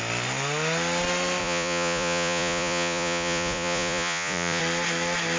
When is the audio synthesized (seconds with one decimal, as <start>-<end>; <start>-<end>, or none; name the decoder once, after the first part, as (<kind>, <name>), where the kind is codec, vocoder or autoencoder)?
1.4-4.6 (vocoder, Vocos)

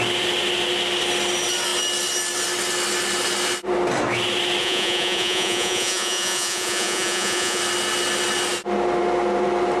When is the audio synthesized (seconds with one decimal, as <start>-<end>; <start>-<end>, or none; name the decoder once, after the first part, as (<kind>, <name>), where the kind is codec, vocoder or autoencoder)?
4.6-7.6 (vocoder, Vocos)

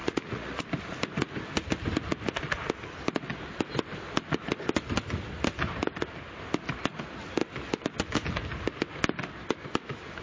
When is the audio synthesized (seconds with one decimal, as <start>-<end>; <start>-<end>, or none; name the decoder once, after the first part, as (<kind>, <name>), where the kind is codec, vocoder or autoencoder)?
0.0-0.6 (vocoder, Vocos)

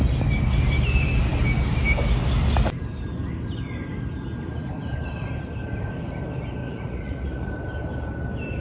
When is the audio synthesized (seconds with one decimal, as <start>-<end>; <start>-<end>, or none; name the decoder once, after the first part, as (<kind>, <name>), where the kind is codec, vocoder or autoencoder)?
6.6-7.5 (vocoder, Vocos)

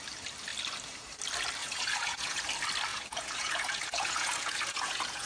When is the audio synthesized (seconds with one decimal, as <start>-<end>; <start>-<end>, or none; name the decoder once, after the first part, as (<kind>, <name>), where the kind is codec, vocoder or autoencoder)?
1.6-2.4 (vocoder, Vocos); 2.9-5.3

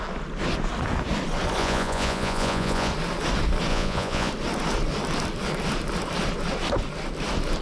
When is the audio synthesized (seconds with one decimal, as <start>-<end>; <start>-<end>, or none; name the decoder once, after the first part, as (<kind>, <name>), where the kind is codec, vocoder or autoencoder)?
1.6-2.9 (vocoder, Vocos); 3.7-4.3

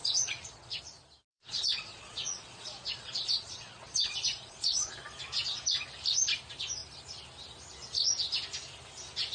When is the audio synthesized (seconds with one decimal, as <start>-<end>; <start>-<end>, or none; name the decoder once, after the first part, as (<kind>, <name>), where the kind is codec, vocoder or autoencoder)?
0.0-0.8 (vocoder, Vocos); 1.3-4.9

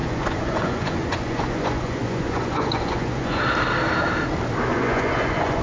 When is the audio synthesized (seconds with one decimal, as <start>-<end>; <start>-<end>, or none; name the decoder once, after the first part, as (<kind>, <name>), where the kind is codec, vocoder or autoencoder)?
0.0-3.4 (vocoder, Vocos); 4.7-5.6